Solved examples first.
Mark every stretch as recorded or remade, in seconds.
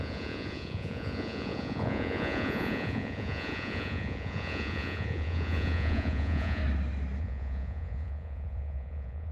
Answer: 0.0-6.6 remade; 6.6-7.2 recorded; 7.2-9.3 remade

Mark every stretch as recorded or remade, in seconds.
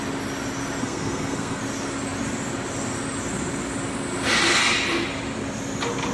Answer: 0.0-0.8 recorded; 0.8-1.6 remade; 1.6-6.1 recorded